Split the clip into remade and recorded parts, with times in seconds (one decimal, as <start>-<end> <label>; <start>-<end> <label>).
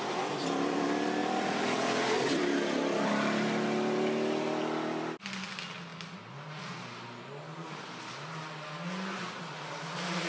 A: 0.0-1.2 recorded; 1.2-3.1 remade; 3.1-10.3 recorded